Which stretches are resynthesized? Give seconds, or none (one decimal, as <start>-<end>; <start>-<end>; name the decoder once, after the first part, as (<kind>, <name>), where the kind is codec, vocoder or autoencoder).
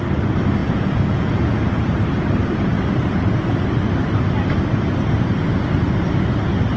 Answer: 0.6-1.6 (vocoder, Vocos)